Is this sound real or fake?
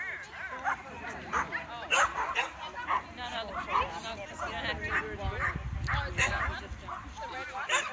real